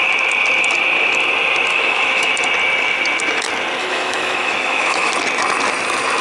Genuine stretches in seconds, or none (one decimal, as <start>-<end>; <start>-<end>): 0.0-1.7; 2.3-3.8; 5.1-6.2